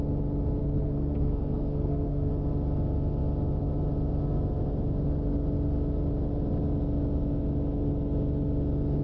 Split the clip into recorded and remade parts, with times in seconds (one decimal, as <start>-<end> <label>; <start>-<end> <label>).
0.0-0.6 recorded; 0.6-2.3 remade; 2.3-9.0 recorded